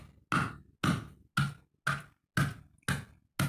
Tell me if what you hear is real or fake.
real